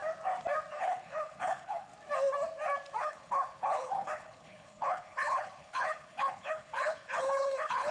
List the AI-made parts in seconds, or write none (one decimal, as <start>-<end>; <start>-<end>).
0.7-1.9; 3.0-7.9